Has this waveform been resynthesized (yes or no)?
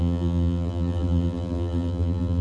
yes